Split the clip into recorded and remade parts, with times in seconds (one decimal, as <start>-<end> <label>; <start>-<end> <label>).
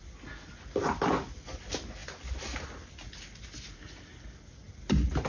0.0-5.3 recorded